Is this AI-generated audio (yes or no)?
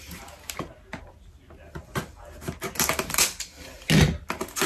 no